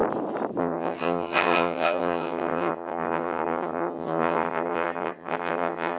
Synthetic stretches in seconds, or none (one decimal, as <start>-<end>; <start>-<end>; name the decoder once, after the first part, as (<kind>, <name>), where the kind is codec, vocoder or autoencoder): 0.6-6.0 (vocoder, HiFi-GAN)